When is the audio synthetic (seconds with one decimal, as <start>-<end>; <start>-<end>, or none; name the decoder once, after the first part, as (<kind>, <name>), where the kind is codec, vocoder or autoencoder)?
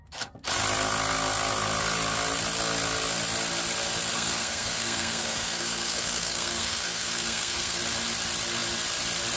4.1-7.8 (codec, SNAC)